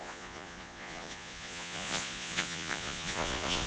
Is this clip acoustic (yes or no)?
no